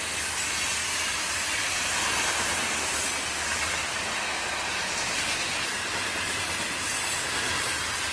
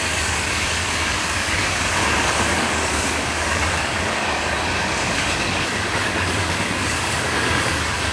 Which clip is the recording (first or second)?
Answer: first